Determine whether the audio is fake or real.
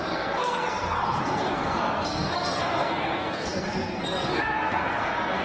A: fake